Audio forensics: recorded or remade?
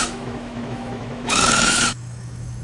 remade